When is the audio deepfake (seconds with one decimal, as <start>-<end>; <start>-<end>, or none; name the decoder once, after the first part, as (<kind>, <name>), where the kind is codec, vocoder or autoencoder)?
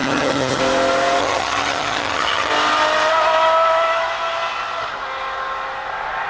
0.0-0.6 (vocoder, HiFi-GAN); 1.2-2.5